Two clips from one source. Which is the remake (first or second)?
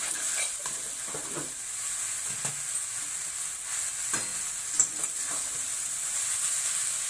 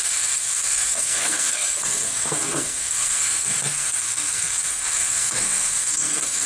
second